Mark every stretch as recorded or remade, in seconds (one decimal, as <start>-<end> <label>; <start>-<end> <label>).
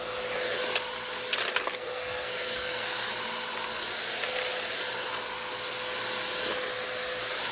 0.0-1.6 recorded; 1.6-3.1 remade; 3.1-7.5 recorded